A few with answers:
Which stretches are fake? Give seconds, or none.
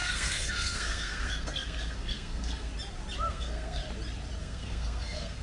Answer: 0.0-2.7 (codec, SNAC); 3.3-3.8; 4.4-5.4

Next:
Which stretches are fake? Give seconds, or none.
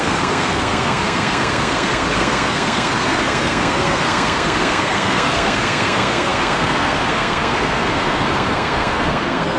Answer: 0.0-9.6 (codec, SNAC)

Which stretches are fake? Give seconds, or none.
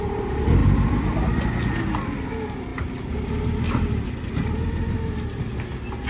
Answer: none